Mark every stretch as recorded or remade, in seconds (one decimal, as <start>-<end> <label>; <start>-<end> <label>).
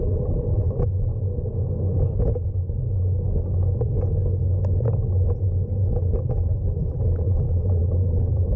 0.0-1.1 remade; 1.1-6.3 recorded; 6.3-8.6 remade